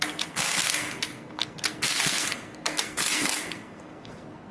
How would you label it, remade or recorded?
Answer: remade